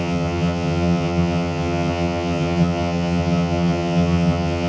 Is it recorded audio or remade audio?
remade